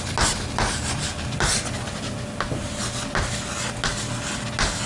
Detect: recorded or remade recorded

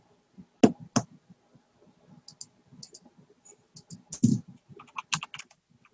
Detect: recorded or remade recorded